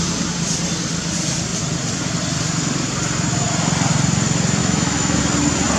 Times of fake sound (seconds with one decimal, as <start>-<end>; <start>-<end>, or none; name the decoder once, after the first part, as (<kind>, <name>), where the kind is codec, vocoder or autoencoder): 4.6-5.2 (autoencoder, DAC-VAE)